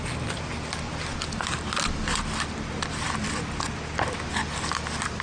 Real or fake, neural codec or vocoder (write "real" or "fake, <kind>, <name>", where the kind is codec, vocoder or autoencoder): real